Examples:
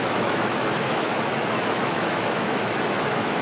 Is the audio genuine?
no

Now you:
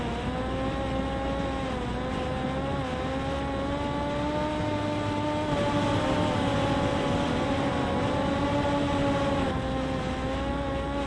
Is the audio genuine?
yes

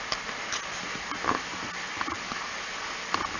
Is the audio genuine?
yes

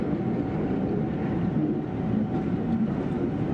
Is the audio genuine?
yes